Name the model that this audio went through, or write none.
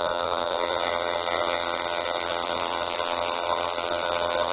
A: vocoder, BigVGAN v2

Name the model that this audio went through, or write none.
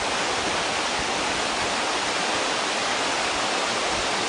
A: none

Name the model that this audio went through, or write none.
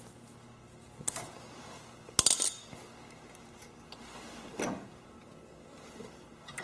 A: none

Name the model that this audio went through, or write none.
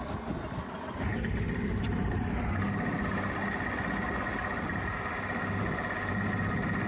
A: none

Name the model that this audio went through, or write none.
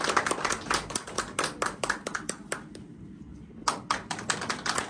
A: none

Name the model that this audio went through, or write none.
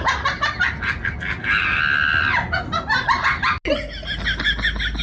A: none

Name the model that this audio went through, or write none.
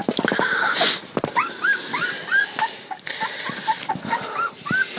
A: none